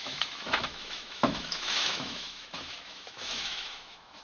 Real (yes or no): no